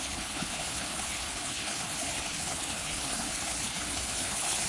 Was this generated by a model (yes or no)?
yes